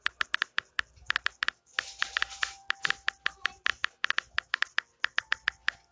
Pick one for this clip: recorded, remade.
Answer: recorded